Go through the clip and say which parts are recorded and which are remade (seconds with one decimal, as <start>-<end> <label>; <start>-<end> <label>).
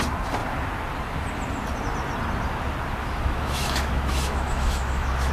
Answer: 0.0-3.0 recorded; 3.0-5.3 remade